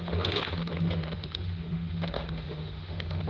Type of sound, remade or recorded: remade